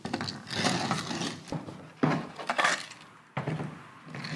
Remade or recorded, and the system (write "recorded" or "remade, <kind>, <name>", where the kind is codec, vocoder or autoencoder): recorded